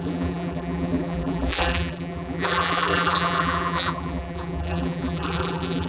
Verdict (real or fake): fake